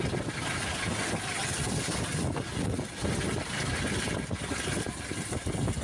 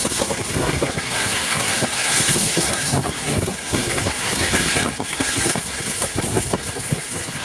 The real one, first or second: first